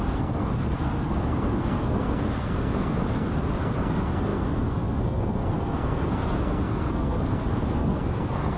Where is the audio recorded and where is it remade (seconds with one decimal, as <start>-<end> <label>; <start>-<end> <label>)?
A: 0.0-8.6 remade